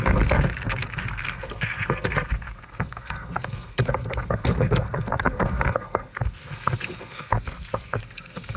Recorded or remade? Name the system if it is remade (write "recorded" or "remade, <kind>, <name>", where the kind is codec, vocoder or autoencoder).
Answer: remade, codec, SNAC